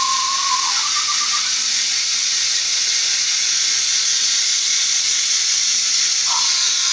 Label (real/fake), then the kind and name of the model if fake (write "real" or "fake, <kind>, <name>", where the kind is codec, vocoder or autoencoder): fake, vocoder, Vocos